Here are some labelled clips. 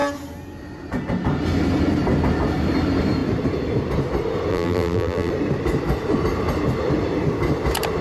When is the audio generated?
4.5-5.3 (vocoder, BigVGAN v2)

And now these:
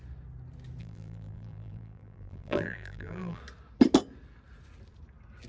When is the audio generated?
0.8-3.4 (vocoder, BigVGAN v2)